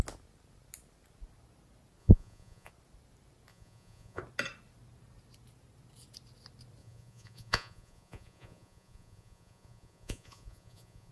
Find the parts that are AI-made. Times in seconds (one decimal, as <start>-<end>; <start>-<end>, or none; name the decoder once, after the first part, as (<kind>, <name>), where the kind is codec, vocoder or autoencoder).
2.0-2.7 (vocoder, Vocos); 3.5-4.2; 6.8-11.1